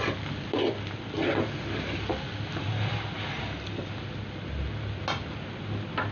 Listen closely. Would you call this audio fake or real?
real